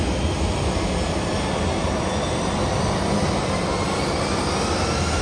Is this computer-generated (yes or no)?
no